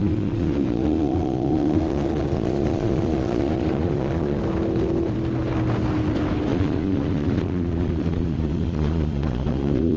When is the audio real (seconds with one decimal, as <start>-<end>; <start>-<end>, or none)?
4.4-6.5